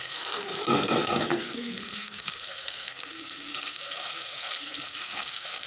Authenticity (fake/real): fake